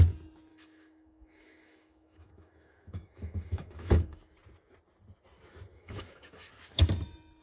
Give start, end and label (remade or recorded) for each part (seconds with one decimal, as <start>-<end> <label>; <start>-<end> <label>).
0.0-0.5 recorded; 0.5-4.2 remade; 4.2-5.7 recorded; 5.7-6.5 remade; 6.5-7.4 recorded